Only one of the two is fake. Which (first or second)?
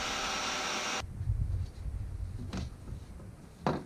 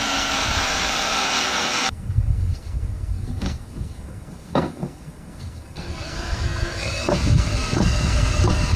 second